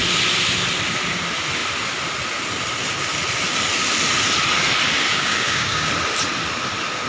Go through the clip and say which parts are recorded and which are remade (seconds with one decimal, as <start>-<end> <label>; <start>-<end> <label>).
0.0-5.1 recorded; 5.1-5.9 remade; 5.9-7.1 recorded